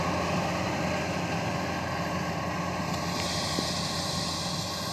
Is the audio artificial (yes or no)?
no